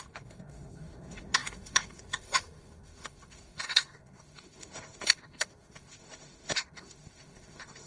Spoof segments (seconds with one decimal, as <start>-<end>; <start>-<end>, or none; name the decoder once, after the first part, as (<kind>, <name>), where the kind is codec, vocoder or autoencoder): 0.0-7.9 (autoencoder, DAC-VAE)